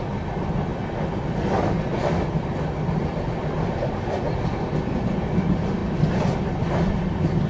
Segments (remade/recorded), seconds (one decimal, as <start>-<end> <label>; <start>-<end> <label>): 0.0-7.5 recorded